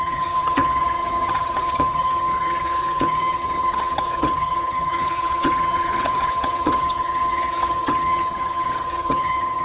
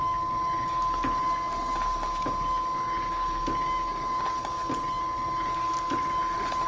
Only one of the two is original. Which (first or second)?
second